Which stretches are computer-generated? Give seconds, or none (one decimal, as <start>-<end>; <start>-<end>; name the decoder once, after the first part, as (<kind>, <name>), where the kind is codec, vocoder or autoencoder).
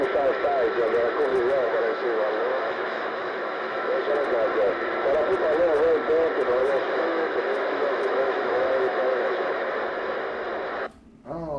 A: 1.3-4.1 (autoencoder, DAC-VAE); 6.6-9.7